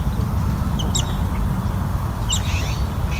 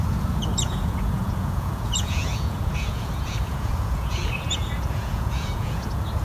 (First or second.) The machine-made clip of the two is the second